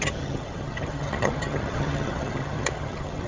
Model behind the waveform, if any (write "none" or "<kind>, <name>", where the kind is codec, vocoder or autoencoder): vocoder, HiFi-GAN